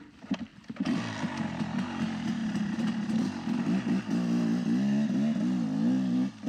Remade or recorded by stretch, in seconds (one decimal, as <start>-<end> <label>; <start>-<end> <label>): 0.0-6.5 recorded